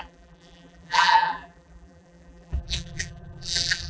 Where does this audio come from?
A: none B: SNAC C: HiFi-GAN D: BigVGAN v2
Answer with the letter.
D